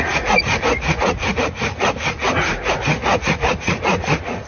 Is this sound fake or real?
fake